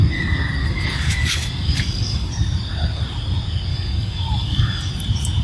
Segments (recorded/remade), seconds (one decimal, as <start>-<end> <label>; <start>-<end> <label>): 0.0-0.6 recorded; 0.6-2.3 remade; 2.3-3.7 recorded; 3.7-4.9 remade; 4.9-5.4 recorded